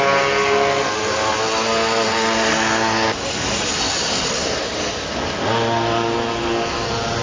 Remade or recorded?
recorded